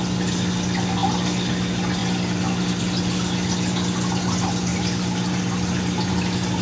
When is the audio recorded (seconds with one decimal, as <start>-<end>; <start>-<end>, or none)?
0.0-1.0; 1.5-2.0; 2.8-4.7; 6.1-6.6